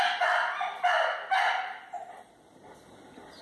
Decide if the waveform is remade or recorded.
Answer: recorded